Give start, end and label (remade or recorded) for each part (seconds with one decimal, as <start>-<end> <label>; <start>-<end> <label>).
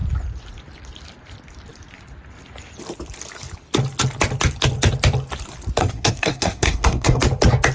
0.0-5.8 recorded; 5.8-7.2 remade; 7.2-7.7 recorded